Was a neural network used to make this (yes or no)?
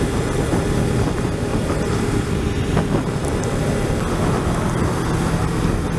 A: no